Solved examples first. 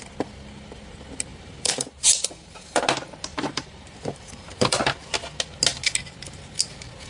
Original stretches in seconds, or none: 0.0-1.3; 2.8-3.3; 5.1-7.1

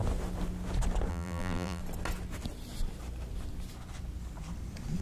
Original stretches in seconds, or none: 0.0-1.1; 1.8-5.0

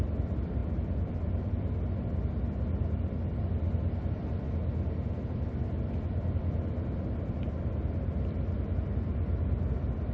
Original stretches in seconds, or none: 4.6-5.3

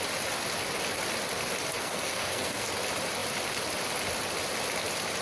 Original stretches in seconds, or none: 0.0-1.7; 2.7-5.2

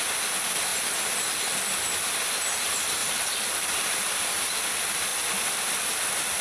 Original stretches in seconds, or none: 0.0-3.0; 4.1-6.4